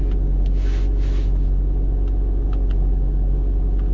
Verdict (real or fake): real